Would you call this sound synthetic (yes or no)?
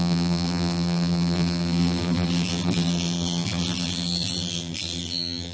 yes